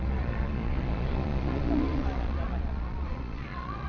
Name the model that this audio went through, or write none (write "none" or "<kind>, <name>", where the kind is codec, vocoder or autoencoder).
vocoder, Vocos